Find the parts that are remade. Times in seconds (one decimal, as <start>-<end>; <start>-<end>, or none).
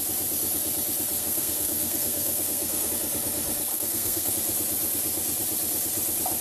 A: 1.2-2.9; 3.7-4.3